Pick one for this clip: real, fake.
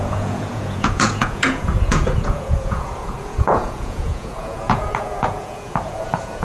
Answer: fake